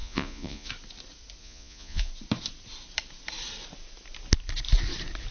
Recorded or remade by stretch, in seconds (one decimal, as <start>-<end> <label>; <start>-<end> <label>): 0.0-0.7 remade; 0.7-1.4 recorded; 1.4-2.1 remade; 2.1-5.3 recorded